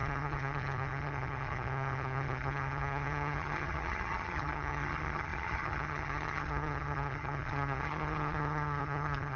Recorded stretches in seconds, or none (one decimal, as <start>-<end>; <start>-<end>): none